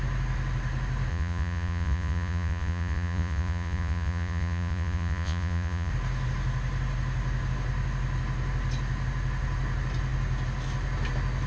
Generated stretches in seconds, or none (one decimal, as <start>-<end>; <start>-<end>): 1.1-5.9